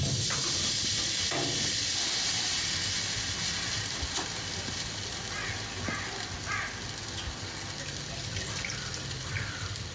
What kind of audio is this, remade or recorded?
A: recorded